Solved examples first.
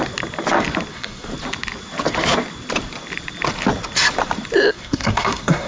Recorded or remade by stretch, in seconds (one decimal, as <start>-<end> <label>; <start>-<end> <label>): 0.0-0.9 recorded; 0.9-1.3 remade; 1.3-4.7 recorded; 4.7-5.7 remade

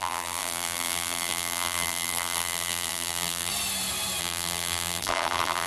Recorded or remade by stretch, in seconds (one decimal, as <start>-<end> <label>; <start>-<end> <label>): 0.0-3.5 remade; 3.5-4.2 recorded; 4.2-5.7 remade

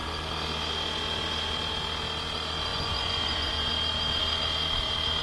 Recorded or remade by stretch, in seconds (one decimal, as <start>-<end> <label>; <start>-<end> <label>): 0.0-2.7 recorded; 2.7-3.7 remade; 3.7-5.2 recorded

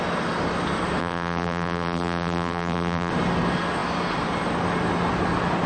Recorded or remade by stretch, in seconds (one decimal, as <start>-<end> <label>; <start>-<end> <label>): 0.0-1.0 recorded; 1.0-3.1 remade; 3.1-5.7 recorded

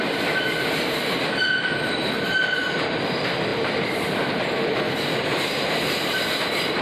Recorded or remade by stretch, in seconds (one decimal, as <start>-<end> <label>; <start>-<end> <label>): 0.0-2.0 recorded; 2.0-3.0 remade; 3.0-3.5 recorded; 3.5-6.8 remade

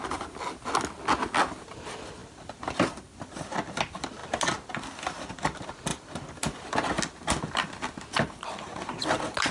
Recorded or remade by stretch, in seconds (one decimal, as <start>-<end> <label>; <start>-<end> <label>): 0.0-9.5 recorded